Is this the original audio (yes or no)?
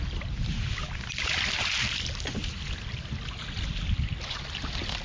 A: yes